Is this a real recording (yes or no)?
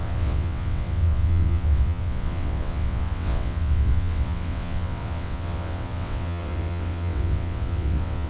no